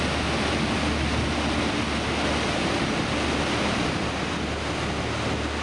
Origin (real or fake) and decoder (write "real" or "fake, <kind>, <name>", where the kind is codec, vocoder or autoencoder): real